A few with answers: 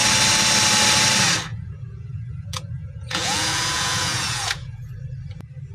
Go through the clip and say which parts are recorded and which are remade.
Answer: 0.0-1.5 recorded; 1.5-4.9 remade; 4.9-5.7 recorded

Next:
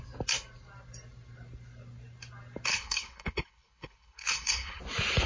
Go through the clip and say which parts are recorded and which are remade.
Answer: 0.0-2.7 recorded; 2.7-4.8 remade; 4.8-5.3 recorded

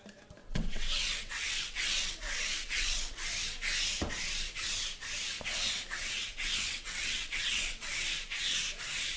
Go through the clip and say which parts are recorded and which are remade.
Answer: 0.0-0.4 recorded; 0.4-3.2 remade; 3.2-6.2 recorded; 6.2-7.9 remade; 7.9-9.2 recorded

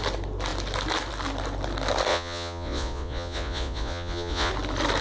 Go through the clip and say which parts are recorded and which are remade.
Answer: 0.0-2.1 recorded; 2.1-4.5 remade; 4.5-5.0 recorded

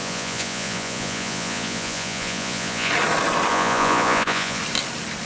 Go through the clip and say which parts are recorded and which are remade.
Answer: 0.0-2.9 remade; 2.9-3.5 recorded; 3.5-4.6 remade; 4.6-5.3 recorded